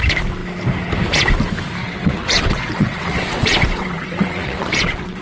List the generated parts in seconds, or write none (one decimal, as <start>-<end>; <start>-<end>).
1.8-5.2